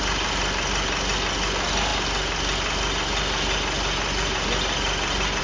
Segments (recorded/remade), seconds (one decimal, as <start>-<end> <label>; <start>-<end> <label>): 0.0-5.4 recorded